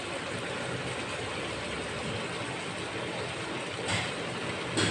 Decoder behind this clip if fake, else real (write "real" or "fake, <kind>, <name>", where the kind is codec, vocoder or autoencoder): real